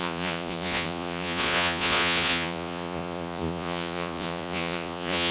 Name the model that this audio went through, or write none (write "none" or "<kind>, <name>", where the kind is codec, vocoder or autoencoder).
vocoder, Vocos